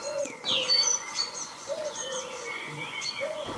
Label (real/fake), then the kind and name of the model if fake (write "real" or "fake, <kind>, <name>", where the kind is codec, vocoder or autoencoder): fake, vocoder, Vocos